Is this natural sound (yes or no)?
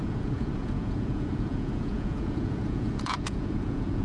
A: no